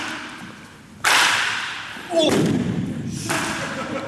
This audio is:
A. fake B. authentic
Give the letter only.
B